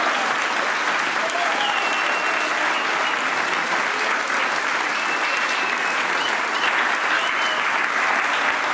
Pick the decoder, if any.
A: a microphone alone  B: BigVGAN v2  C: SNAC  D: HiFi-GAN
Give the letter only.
A